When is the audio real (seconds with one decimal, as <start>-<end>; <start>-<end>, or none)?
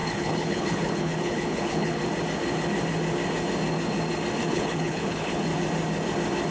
2.0-4.4; 5.5-6.5